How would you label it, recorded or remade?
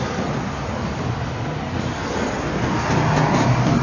recorded